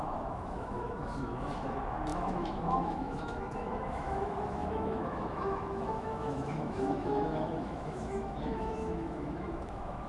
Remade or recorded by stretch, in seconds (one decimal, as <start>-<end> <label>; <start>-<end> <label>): 0.0-10.1 remade